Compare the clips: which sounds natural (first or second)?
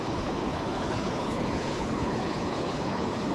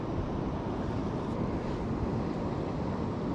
second